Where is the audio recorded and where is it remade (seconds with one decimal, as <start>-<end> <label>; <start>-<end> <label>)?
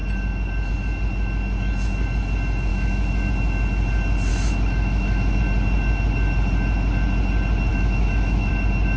0.0-2.7 recorded; 2.7-3.3 remade; 3.3-4.3 recorded; 4.3-5.4 remade; 5.4-7.7 recorded; 7.7-8.5 remade; 8.5-9.0 recorded